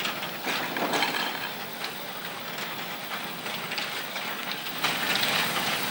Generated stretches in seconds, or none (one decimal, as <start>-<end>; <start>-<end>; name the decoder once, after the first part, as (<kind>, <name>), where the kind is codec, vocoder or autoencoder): 1.7-2.4 (codec, DAC); 3.0-5.9